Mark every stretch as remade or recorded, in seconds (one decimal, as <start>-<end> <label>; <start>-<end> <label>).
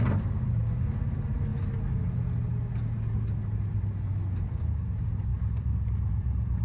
0.0-5.3 recorded; 5.3-6.6 remade